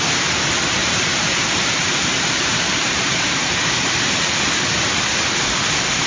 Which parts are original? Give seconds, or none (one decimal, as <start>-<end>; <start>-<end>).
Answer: 0.0-0.8; 4.5-6.1